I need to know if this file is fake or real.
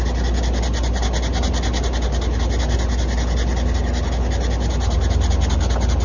real